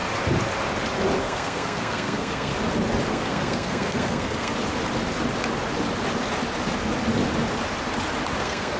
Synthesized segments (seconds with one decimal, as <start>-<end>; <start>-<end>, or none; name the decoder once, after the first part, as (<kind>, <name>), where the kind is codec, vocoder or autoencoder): 1.2-2.5 (codec, SNAC); 3.1-4.5; 8.4-8.8